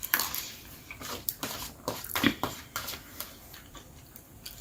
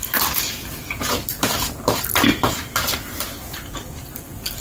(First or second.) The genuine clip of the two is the second